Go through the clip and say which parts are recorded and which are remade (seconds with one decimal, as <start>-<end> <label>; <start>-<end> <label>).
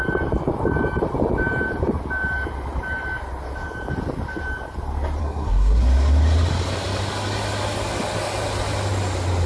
0.0-5.2 recorded; 5.2-5.8 remade; 5.8-9.5 recorded